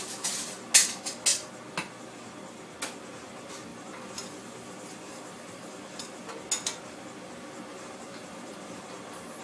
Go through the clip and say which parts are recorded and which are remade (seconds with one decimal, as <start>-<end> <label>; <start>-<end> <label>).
0.0-3.7 recorded; 3.7-6.1 remade; 6.1-7.7 recorded; 7.7-9.4 remade